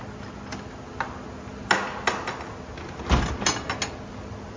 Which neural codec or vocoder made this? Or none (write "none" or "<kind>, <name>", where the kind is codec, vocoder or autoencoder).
none